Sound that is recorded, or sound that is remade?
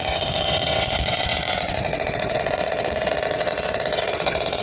remade